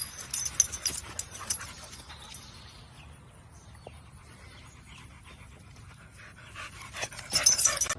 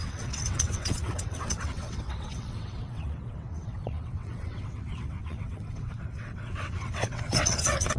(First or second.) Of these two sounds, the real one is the first